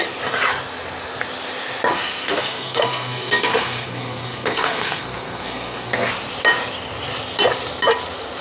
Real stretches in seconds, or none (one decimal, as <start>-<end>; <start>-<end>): 0.0-1.9; 6.1-8.4